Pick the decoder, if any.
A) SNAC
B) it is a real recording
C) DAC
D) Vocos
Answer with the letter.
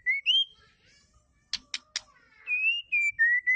B